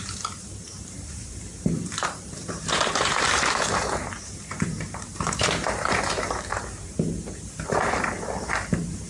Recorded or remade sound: remade